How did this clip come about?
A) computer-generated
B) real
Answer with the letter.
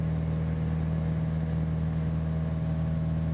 B